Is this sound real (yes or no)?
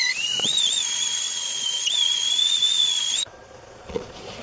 no